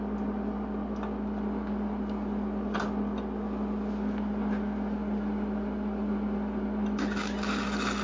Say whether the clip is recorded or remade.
recorded